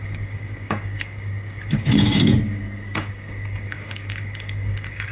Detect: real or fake fake